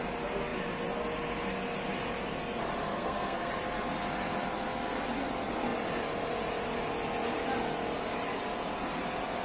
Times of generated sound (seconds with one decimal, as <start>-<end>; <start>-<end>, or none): 2.9-3.5